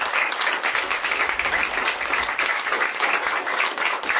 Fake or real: fake